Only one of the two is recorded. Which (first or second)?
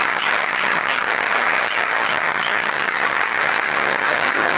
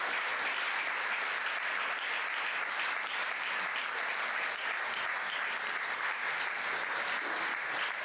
second